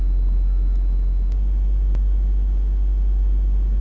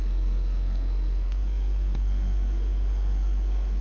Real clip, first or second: first